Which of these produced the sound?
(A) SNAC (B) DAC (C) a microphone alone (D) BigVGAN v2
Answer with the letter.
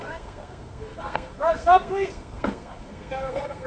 A